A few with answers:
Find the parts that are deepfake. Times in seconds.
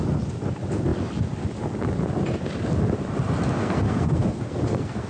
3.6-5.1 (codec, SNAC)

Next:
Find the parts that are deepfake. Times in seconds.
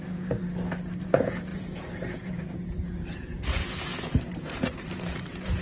0.0-0.4 (vocoder, Vocos); 1.0-5.6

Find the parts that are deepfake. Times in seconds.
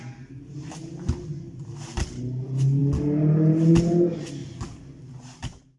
4.4-5.0 (vocoder, BigVGAN v2)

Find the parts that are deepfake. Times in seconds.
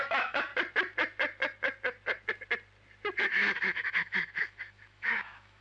0.0-0.5 (autoencoder, DAC-VAE); 3.2-5.6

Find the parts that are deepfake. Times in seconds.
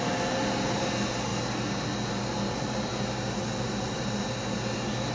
0.0-1.3 (vocoder, BigVGAN v2); 2.5-5.1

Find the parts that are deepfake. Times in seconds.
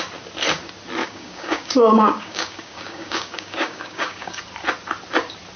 1.0-4.4 (codec, DAC)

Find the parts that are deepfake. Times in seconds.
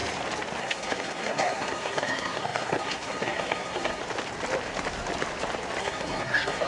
0.6-4.0 (codec, SNAC); 5.8-6.7